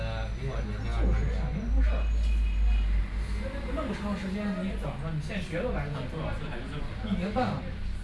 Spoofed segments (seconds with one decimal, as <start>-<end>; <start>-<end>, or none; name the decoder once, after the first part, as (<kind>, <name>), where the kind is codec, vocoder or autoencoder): none

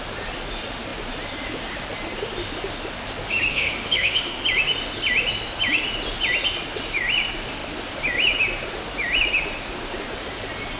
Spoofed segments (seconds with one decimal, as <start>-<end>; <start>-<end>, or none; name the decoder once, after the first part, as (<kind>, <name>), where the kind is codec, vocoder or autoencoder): 3.5-4.4 (autoencoder, DAC-VAE)

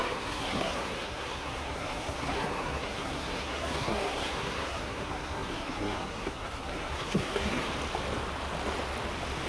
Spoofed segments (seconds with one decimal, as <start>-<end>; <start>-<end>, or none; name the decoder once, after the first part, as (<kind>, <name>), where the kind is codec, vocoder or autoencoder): 0.0-7.7 (codec, SNAC)

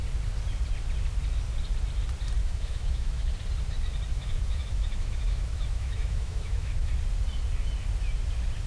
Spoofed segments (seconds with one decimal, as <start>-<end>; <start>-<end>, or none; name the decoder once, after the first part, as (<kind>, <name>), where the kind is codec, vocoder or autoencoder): 2.4-3.3 (autoencoder, DAC-VAE); 4.1-6.9

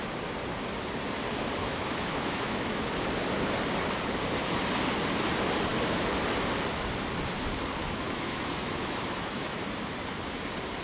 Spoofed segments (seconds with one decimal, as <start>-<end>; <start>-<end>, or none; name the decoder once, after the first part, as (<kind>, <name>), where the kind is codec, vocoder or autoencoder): 1.7-2.8 (autoencoder, DAC-VAE); 7.8-9.6

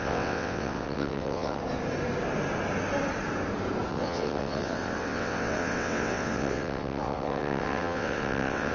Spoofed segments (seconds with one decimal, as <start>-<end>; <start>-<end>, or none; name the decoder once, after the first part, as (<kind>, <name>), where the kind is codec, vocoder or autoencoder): 0.0-1.6 (vocoder, WaveNeXt); 3.9-8.7